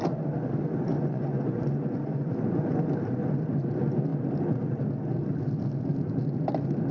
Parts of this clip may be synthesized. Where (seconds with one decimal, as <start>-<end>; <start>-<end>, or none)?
0.9-2.3